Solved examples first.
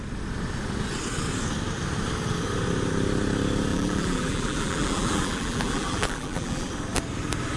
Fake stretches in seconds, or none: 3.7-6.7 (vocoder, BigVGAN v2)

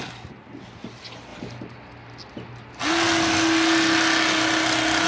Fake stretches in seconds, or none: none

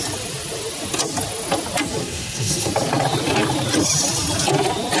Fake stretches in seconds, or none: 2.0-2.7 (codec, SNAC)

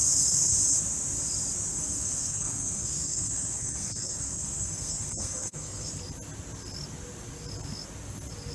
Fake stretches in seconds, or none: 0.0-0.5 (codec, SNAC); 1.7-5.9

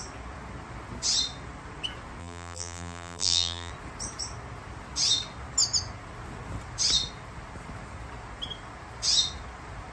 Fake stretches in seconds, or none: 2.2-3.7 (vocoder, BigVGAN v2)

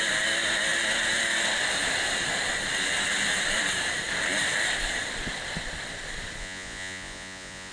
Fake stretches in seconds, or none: 6.4-7.7 (vocoder, Vocos)